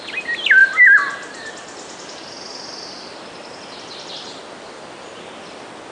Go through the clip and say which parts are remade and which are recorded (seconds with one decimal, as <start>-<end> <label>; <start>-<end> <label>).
0.0-5.9 recorded